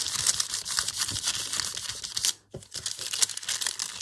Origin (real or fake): real